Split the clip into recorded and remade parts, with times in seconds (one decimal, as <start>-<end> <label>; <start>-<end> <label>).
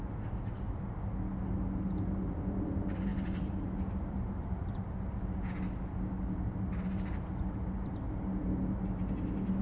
0.0-9.6 recorded